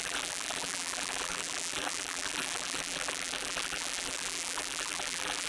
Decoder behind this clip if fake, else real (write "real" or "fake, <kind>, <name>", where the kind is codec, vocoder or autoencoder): fake, vocoder, BigVGAN v2